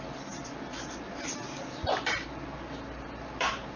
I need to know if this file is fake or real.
real